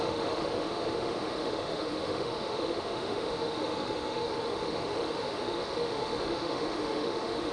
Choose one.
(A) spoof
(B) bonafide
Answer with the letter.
A